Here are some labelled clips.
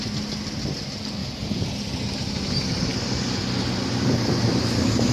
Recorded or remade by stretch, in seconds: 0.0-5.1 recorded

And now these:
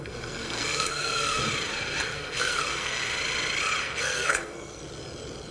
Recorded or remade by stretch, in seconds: 0.0-1.4 remade; 1.4-2.0 recorded; 2.0-3.0 remade; 3.0-3.8 recorded; 3.8-4.8 remade; 4.8-5.5 recorded

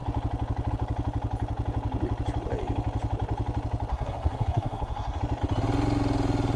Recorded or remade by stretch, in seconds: 0.0-3.9 recorded; 3.9-5.2 remade; 5.2-6.6 recorded

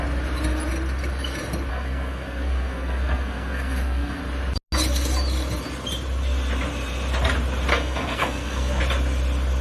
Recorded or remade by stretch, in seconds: 0.0-1.7 recorded; 1.7-4.2 remade; 4.2-7.7 recorded; 7.7-8.8 remade; 8.8-9.6 recorded

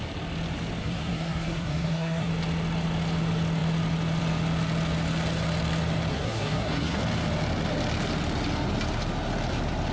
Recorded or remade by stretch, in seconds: 0.0-0.8 recorded; 0.8-2.3 remade; 2.3-6.1 recorded; 6.1-7.0 remade; 7.0-9.9 recorded